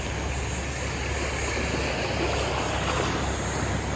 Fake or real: real